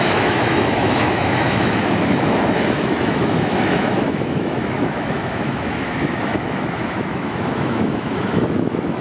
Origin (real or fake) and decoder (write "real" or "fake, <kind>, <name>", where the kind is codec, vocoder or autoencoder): fake, autoencoder, DAC-VAE